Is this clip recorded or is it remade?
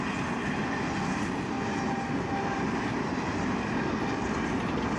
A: recorded